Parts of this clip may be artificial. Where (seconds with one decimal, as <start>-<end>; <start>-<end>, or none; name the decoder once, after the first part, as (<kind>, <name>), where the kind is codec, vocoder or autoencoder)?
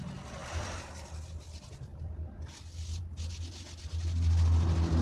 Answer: 0.4-1.2 (vocoder, BigVGAN v2)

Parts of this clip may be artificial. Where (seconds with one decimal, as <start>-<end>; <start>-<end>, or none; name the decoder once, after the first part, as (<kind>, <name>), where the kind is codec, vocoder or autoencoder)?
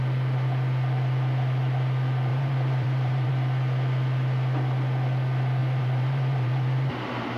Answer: 2.3-3.3 (vocoder, BigVGAN v2); 5.6-7.4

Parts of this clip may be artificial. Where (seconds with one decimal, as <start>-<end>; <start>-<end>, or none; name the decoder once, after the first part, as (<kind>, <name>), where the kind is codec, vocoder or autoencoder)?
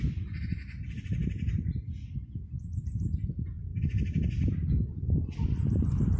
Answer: 0.0-3.7 (vocoder, BigVGAN v2); 4.7-6.2